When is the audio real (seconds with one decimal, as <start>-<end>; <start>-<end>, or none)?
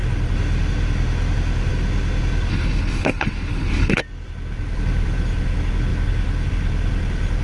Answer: 0.0-2.5; 4.0-7.4